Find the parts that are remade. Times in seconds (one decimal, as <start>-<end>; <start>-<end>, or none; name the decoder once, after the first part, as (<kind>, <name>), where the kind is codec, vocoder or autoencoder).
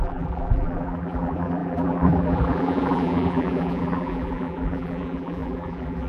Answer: 0.0-6.1 (vocoder, BigVGAN v2)